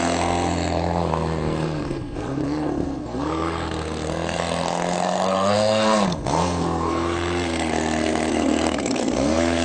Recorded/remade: remade